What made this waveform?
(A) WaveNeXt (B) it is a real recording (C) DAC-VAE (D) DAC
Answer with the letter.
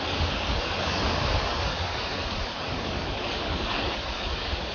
D